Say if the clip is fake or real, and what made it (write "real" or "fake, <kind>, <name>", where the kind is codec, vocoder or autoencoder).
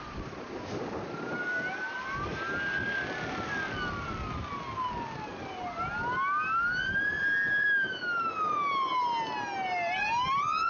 real